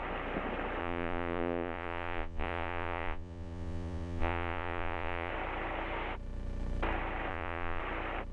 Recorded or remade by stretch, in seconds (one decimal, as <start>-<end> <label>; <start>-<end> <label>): 0.0-0.8 recorded; 0.8-5.3 remade; 5.3-7.3 recorded; 7.3-7.8 remade; 7.8-8.3 recorded